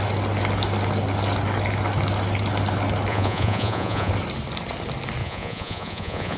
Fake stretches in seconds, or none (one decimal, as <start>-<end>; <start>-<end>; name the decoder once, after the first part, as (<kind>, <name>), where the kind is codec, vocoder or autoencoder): 3.1-4.1 (vocoder, Vocos); 5.2-6.4